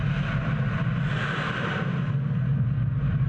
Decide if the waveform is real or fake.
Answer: fake